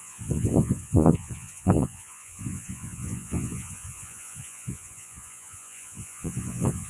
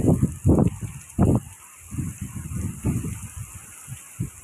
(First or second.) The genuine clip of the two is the second